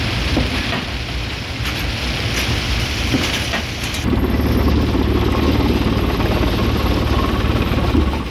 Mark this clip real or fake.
real